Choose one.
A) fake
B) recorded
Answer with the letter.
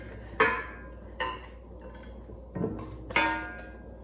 B